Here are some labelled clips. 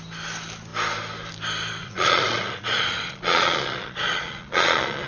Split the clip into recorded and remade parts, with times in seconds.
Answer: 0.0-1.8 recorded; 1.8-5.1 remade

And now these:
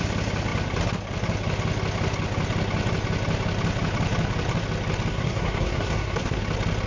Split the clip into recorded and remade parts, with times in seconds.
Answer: 0.0-5.1 recorded; 5.1-6.4 remade; 6.4-6.9 recorded

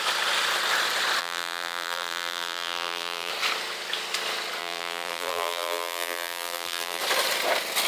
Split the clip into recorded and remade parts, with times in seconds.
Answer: 0.0-1.2 recorded; 1.2-3.3 remade; 3.3-4.6 recorded; 4.6-7.0 remade; 7.0-7.9 recorded

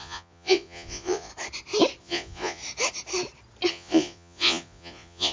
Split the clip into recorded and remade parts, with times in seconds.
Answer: 0.0-1.3 remade; 1.3-2.0 recorded; 2.0-2.6 remade; 2.6-3.7 recorded; 3.7-5.3 remade

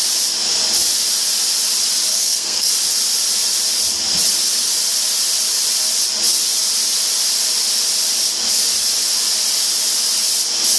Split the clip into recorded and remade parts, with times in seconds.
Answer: 0.0-2.1 recorded; 2.1-2.7 remade; 2.7-10.8 recorded

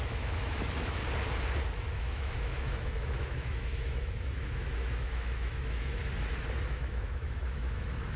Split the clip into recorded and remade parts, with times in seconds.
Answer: 0.0-1.0 remade; 1.0-1.9 recorded; 1.9-6.0 remade; 6.0-6.7 recorded; 6.7-8.2 remade

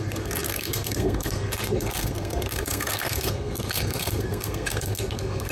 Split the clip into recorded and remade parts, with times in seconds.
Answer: 0.0-5.5 remade

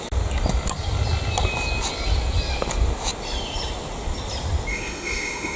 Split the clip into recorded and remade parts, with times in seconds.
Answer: 0.0-4.7 recorded; 4.7-5.6 remade